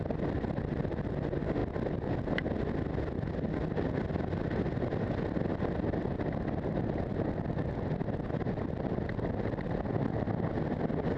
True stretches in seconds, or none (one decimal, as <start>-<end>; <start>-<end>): 0.0-11.2